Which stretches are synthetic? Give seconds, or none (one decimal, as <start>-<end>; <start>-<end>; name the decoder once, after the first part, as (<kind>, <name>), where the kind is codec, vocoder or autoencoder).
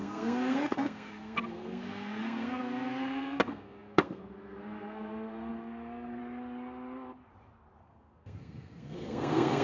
0.0-6.2 (codec, SNAC); 7.8-9.6